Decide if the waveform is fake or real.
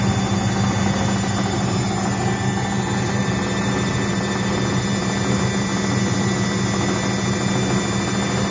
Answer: real